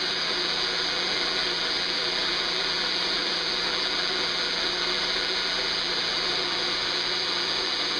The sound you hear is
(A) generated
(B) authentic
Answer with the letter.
A